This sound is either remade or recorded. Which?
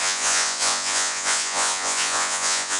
remade